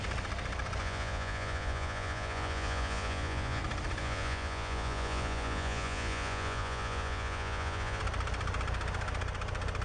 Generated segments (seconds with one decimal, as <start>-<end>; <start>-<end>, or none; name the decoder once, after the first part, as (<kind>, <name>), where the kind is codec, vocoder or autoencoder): 0.8-3.6 (vocoder, Vocos); 4.0-8.0